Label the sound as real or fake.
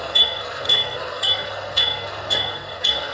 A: fake